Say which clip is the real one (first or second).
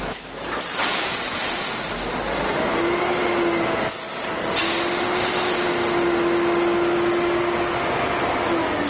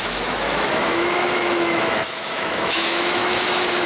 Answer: first